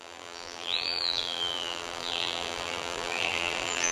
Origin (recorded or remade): remade